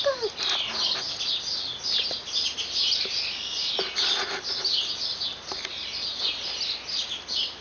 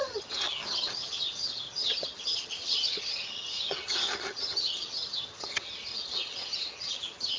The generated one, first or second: second